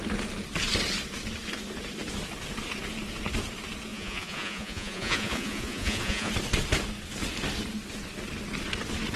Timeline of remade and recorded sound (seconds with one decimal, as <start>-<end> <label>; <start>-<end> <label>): 0.0-3.9 recorded; 3.9-6.3 remade; 6.3-9.2 recorded